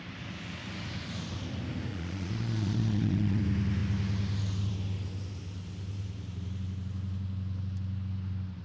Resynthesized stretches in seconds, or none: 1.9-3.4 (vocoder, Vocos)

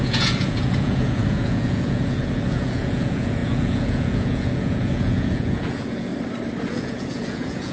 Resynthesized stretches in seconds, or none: 0.0-6.1 (vocoder, Vocos); 6.6-7.7

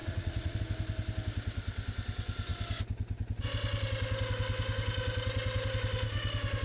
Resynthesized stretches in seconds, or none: 0.0-0.6 (vocoder, Vocos)

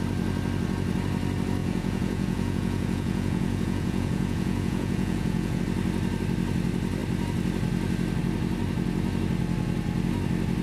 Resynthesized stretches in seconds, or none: 1.6-5.6 (vocoder, Vocos)

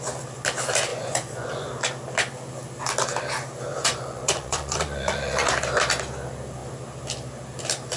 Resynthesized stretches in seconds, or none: 0.9-1.7 (vocoder, Vocos); 3.7-5.5

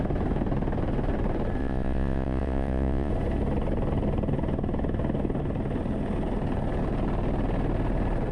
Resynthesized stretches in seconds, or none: 1.6-3.1 (vocoder, Vocos)

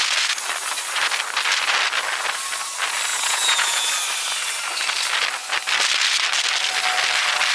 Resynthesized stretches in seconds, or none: 3.1-3.9 (vocoder, Vocos)